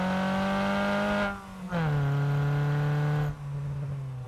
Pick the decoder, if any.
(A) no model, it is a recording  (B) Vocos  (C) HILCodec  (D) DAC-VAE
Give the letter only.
A